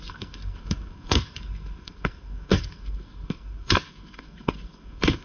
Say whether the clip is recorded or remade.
remade